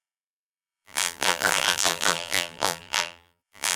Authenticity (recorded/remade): remade